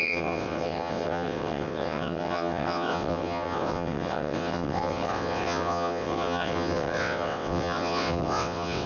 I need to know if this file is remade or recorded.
remade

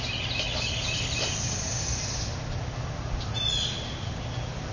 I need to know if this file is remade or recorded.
recorded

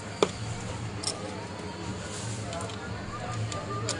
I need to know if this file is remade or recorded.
recorded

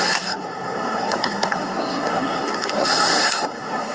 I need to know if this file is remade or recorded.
remade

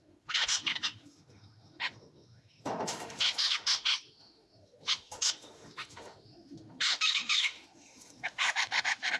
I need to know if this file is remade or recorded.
remade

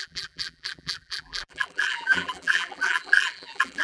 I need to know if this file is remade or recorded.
remade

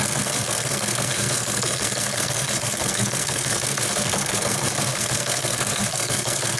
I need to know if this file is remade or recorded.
remade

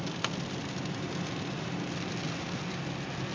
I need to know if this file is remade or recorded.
recorded